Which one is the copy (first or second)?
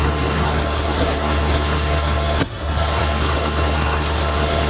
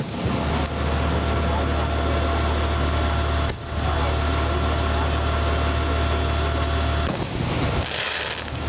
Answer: first